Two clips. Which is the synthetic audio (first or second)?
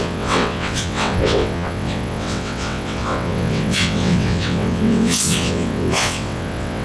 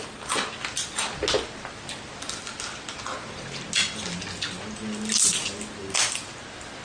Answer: first